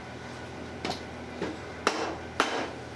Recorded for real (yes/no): yes